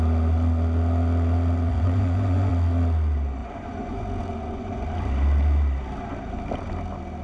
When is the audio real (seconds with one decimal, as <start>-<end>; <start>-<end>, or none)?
0.0-1.7; 2.5-3.4; 4.8-7.2